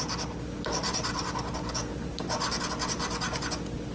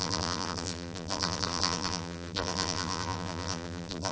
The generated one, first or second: second